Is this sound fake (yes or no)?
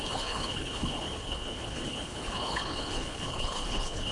yes